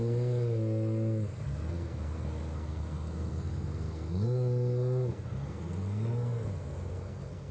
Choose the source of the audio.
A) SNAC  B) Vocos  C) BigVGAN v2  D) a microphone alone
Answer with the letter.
A